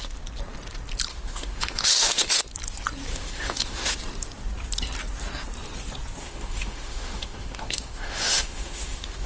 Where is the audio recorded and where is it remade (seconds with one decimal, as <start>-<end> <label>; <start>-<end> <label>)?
0.0-1.1 recorded; 1.1-2.4 remade; 2.4-3.1 recorded; 3.1-3.9 remade; 3.9-6.2 recorded; 6.2-9.3 remade